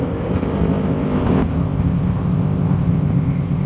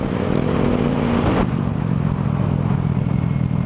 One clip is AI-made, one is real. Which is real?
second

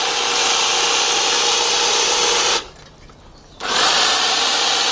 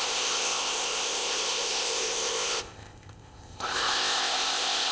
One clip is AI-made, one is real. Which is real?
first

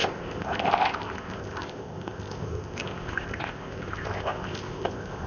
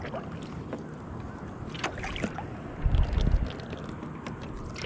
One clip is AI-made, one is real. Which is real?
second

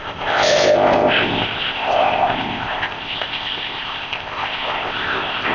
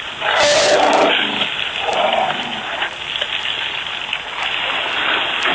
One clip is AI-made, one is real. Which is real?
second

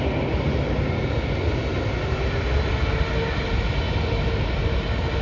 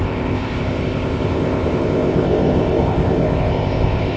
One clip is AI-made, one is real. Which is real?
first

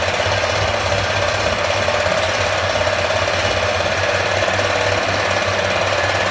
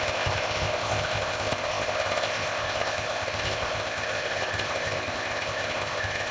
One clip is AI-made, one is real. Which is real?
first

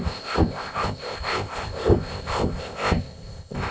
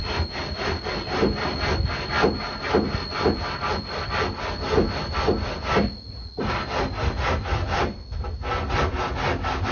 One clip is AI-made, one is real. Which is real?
second